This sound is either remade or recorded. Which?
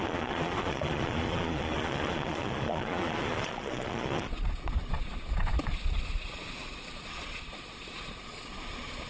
remade